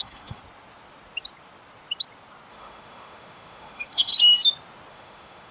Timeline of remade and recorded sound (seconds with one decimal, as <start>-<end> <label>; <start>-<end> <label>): 0.0-0.4 remade; 0.4-2.5 recorded; 2.5-4.1 remade; 4.1-4.9 recorded; 4.9-5.5 remade